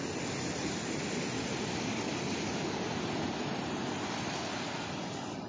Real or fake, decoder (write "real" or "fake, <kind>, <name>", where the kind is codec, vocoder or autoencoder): real